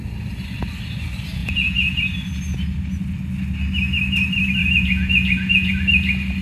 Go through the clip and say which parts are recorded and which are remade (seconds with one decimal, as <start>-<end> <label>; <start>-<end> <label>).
0.0-1.4 recorded; 1.4-2.0 remade; 2.0-4.6 recorded; 4.6-5.7 remade; 5.7-6.4 recorded